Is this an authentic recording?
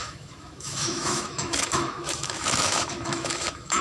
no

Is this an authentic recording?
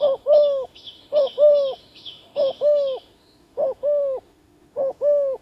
no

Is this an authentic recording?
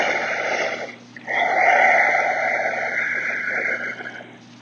yes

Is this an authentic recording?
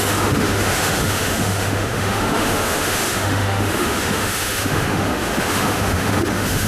no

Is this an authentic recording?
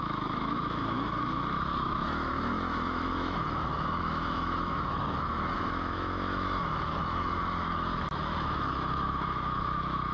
no